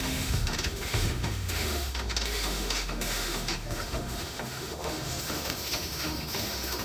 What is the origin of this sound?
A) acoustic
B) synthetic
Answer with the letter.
B